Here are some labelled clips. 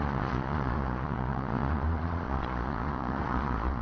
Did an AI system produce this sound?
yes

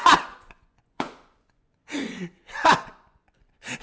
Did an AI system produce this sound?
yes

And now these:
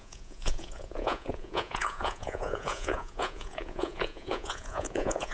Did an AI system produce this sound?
yes